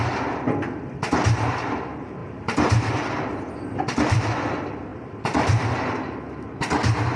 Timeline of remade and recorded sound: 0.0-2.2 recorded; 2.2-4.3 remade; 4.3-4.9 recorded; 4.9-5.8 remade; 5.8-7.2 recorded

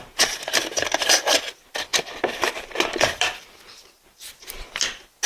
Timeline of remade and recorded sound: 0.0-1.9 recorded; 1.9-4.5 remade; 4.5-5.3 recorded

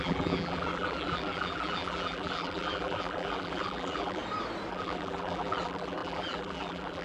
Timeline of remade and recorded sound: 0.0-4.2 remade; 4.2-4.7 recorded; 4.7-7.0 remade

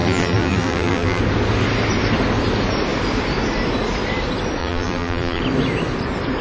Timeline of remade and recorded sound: 0.0-1.2 remade; 1.2-4.6 recorded; 4.6-5.4 remade; 5.4-6.4 recorded